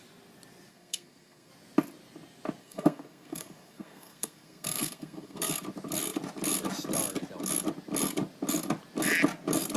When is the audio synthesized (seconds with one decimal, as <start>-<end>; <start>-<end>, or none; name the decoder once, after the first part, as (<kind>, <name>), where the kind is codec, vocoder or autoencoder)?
0.7-1.5 (codec, SNAC); 2.6-5.5